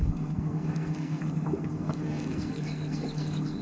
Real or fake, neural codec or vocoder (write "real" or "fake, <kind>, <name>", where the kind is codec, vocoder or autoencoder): fake, codec, SNAC